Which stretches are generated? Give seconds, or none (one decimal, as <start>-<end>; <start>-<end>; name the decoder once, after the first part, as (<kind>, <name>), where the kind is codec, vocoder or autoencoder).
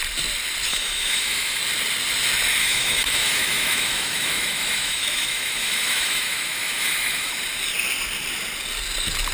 0.7-1.6 (autoencoder, DAC-VAE); 2.6-7.3